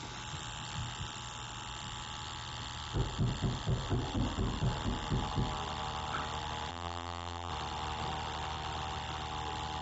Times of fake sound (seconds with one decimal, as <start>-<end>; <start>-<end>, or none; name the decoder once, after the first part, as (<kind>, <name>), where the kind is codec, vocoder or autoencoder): 6.7-7.5 (vocoder, BigVGAN v2)